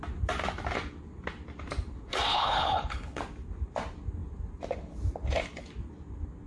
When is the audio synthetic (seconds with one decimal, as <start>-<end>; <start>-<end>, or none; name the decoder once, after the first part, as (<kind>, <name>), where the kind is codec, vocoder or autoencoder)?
2.3-3.2 (codec, HILCodec)

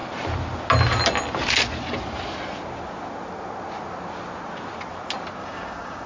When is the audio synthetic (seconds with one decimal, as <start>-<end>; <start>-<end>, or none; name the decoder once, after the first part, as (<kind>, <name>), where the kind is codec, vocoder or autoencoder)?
5.4-6.1 (codec, DAC)

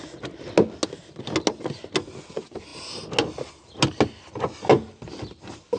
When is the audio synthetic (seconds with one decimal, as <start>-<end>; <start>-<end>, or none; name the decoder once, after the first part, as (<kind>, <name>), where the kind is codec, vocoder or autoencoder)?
none